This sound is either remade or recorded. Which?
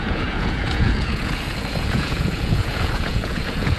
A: remade